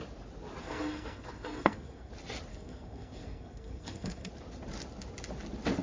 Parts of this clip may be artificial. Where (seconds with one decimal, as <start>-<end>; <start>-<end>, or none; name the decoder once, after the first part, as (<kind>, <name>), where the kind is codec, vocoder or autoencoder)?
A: 0.6-2.1 (codec, SNAC); 2.5-4.3

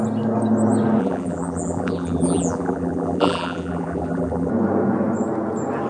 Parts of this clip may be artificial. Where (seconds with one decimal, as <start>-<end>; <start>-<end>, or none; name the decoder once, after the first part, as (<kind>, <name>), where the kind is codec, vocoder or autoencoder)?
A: 1.0-4.5 (vocoder, BigVGAN v2)

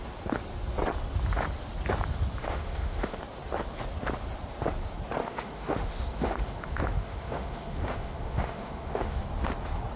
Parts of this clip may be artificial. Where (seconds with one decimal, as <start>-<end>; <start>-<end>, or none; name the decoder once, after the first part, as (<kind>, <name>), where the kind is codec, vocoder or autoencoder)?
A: 2.4-3.2 (autoencoder, DAC-VAE); 5.2-9.2

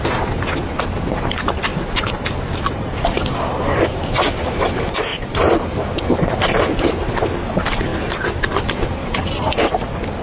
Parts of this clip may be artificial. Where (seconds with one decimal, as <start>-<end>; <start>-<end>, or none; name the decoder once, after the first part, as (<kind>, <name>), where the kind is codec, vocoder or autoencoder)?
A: 1.7-3.6 (vocoder, BigVGAN v2); 5.1-6.6; 7.9-8.6

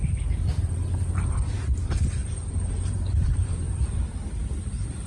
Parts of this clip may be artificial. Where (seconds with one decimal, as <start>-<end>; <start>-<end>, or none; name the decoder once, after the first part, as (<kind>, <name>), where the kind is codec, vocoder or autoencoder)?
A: 0.8-1.4 (vocoder, BigVGAN v2); 2.2-3.7

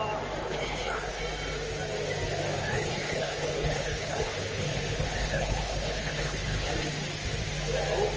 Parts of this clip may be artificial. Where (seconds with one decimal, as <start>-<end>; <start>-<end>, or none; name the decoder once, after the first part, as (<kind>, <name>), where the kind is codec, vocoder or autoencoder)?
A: 0.4-1.2 (codec, HILCodec); 2.6-6.7

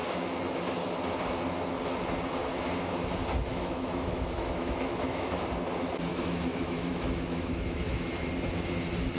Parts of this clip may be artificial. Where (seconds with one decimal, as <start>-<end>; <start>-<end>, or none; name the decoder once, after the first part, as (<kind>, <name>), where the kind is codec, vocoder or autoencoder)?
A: 3.5-5.4 (autoencoder, DAC-VAE); 6.1-8.3

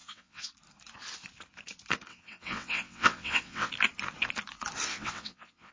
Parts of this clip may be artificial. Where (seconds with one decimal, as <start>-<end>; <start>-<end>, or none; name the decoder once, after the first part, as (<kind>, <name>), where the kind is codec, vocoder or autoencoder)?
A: 0.0-0.5 (vocoder, WaveNeXt); 2.1-3.7; 4.9-5.7